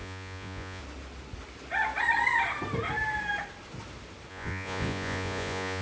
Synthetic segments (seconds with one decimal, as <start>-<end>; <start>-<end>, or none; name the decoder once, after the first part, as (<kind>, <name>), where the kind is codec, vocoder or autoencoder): 0.0-0.8 (vocoder, Vocos); 4.3-5.8